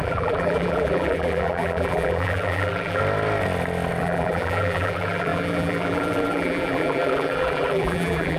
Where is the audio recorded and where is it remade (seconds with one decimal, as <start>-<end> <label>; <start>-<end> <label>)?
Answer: 0.0-3.0 remade; 3.0-4.0 recorded; 4.0-8.4 remade